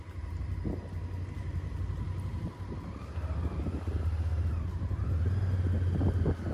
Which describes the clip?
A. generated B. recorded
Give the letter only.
B